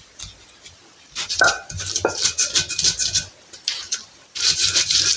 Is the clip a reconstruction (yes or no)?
no